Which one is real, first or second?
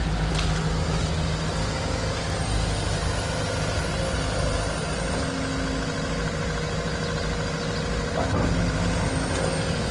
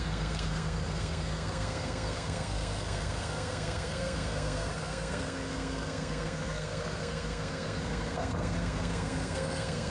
first